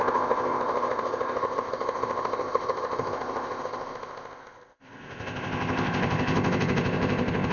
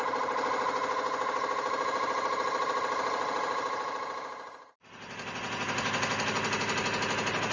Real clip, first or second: second